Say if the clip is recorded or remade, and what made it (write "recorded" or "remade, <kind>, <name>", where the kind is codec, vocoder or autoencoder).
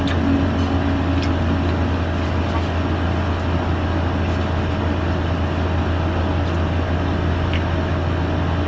recorded